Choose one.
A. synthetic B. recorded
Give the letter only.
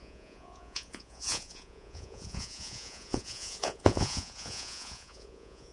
A